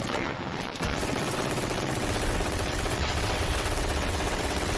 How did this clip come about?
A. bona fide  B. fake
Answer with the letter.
B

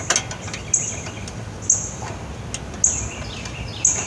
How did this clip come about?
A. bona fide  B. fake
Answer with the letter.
A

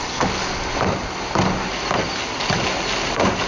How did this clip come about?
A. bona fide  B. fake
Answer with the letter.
A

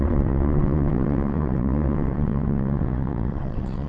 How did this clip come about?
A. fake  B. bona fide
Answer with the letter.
A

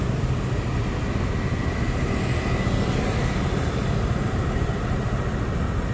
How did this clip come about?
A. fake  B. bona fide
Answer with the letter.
B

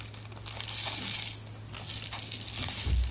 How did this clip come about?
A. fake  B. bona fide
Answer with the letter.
B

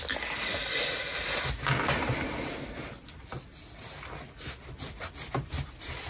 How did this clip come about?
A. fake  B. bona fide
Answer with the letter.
B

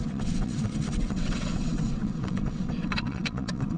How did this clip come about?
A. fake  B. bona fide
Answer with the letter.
A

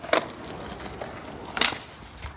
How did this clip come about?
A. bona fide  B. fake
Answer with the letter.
A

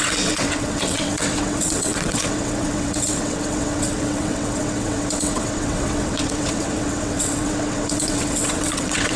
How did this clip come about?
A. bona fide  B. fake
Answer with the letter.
B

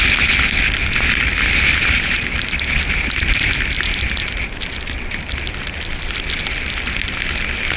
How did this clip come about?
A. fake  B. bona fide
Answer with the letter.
B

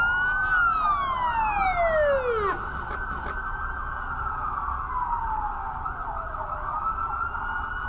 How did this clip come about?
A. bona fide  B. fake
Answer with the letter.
A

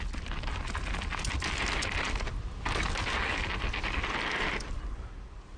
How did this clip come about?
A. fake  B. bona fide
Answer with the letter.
B